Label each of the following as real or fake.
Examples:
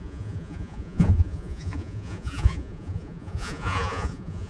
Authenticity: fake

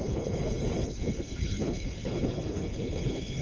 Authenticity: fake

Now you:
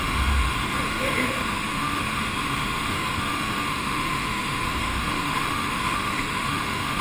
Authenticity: fake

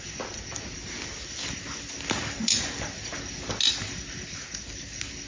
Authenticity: real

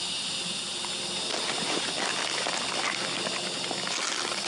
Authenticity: real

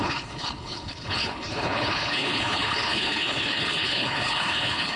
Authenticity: fake